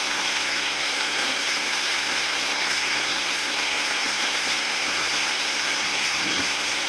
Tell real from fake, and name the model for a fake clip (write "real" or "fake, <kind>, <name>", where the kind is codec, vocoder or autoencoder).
fake, codec, SNAC